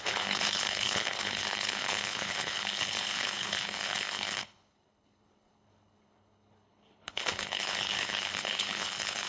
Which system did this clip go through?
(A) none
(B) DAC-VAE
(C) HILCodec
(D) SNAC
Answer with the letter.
C